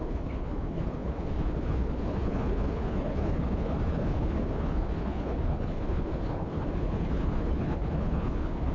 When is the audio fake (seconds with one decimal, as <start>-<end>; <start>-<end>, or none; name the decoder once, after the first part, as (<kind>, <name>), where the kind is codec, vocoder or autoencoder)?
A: 0.0-8.7 (codec, HILCodec)